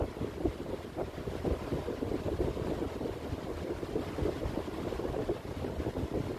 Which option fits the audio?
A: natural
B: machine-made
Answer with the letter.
A